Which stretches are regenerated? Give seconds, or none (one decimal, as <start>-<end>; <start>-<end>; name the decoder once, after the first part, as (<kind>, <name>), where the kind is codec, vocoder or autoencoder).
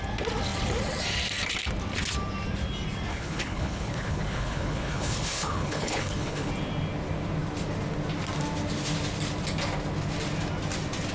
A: 3.1-6.5 (codec, HILCodec)